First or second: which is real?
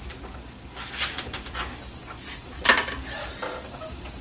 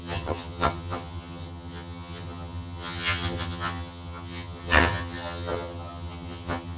first